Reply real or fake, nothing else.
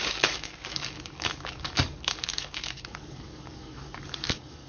fake